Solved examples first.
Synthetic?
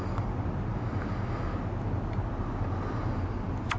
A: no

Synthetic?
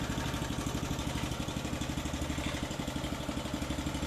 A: no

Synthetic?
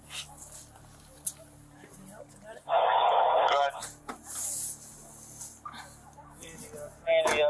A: no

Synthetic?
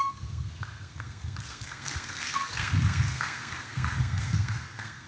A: yes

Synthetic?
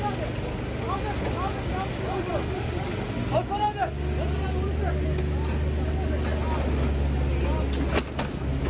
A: no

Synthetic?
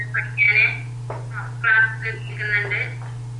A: no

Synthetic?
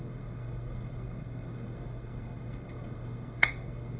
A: yes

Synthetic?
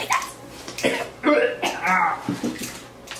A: no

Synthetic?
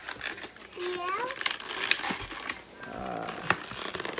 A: no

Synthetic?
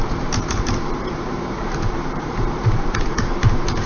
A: yes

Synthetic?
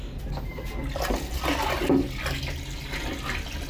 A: no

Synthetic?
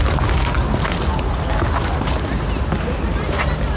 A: no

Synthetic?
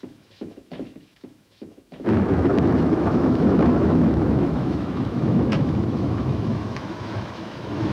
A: yes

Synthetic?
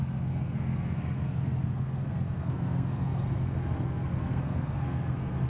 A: yes